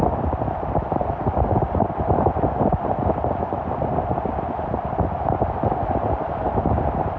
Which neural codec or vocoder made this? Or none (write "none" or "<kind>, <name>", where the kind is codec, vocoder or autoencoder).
vocoder, BigVGAN v2